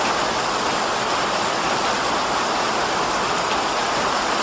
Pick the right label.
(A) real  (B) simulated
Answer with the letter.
A